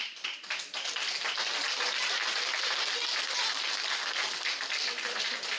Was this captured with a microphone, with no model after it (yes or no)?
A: yes